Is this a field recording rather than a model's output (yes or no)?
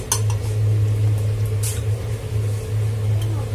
yes